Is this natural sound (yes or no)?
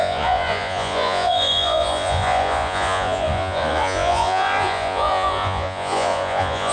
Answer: no